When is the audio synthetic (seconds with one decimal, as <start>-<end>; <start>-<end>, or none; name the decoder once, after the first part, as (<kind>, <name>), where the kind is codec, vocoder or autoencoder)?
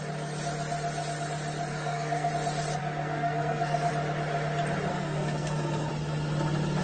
1.7-2.3 (codec, SNAC); 2.8-3.9; 4.9-5.9